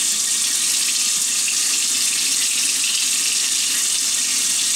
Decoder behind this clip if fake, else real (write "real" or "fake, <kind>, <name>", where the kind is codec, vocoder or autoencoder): real